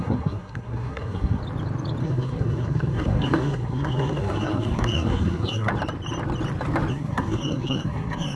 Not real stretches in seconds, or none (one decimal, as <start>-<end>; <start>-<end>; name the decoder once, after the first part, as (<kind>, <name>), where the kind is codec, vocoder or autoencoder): 0.0-1.4 (codec, SNAC); 2.0-5.7; 6.9-8.4